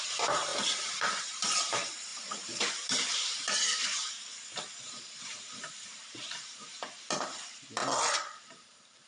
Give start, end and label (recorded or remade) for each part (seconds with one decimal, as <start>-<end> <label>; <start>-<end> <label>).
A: 0.0-4.2 remade; 4.2-4.8 recorded; 4.8-7.8 remade; 7.8-8.4 recorded; 8.4-9.1 remade